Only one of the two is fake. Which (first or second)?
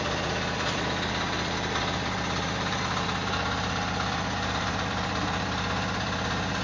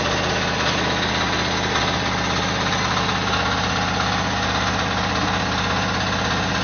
first